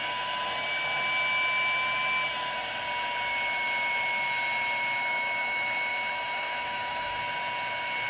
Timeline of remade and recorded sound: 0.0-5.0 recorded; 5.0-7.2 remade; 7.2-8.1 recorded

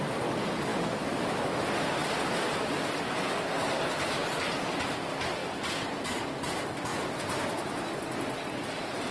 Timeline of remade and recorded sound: 0.0-0.7 recorded; 0.7-1.6 remade; 1.6-9.1 recorded

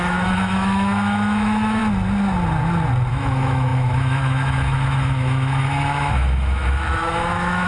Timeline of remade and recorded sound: 0.0-1.8 remade; 1.8-3.1 recorded; 3.1-7.7 remade

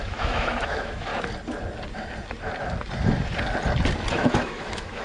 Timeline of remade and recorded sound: 0.0-1.1 remade; 1.1-4.1 recorded; 4.1-5.0 remade

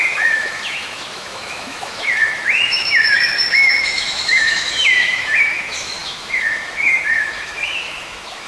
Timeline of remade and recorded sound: 0.0-8.5 remade